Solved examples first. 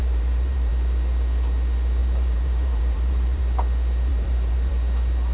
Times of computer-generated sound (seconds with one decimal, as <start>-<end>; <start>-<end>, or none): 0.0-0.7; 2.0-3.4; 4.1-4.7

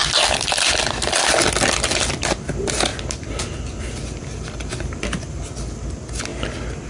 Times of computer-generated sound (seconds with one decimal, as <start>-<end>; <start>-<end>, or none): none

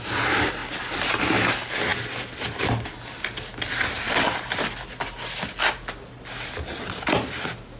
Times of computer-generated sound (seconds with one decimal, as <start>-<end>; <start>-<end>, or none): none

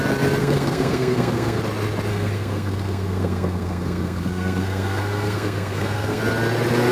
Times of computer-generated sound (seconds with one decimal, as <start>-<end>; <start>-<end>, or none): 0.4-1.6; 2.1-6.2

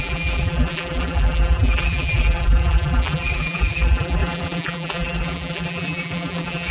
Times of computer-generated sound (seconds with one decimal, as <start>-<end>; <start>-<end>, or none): 0.0-6.7